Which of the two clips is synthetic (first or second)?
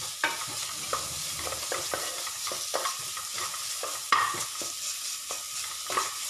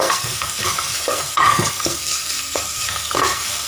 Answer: second